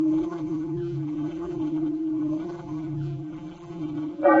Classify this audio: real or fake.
fake